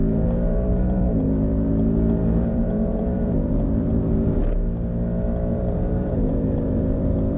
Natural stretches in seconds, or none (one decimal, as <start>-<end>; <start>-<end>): 4.4-5.5